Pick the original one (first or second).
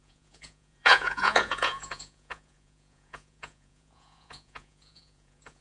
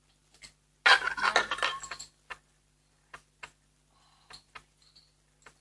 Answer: second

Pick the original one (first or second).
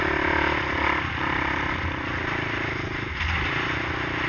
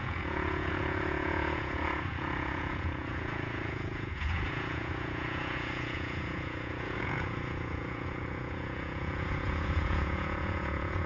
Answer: first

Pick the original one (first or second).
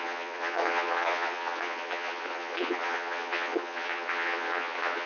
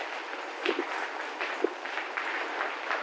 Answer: second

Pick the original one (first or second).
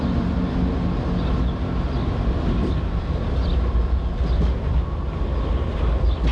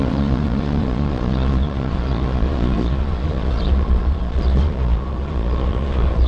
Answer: first